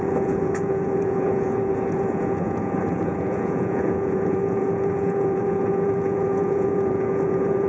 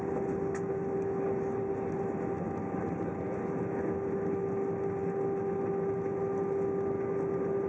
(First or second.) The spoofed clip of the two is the first